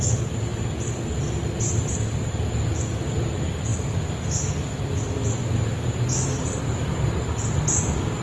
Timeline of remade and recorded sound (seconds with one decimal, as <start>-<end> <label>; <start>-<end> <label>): 0.0-8.2 recorded